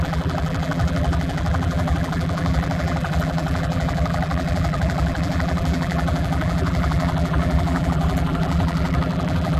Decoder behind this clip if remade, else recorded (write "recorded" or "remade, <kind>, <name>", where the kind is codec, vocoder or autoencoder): remade, vocoder, BigVGAN v2